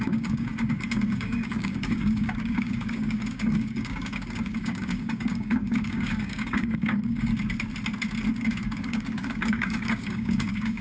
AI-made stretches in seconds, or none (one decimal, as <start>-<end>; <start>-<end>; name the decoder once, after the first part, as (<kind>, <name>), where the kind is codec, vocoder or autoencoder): 0.0-7.3 (codec, DAC); 8.3-10.8